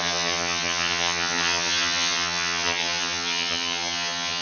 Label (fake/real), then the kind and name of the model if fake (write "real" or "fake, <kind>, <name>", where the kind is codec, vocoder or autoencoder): fake, vocoder, HiFi-GAN